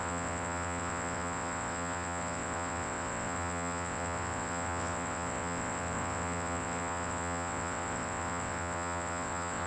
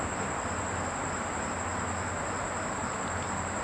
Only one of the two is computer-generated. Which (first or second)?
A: first